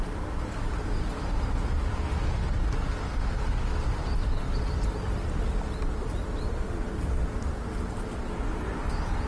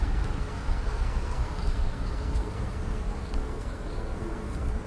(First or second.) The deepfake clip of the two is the second